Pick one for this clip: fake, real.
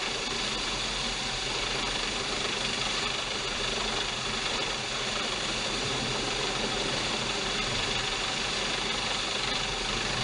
real